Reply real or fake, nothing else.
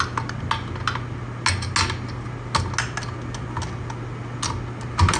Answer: real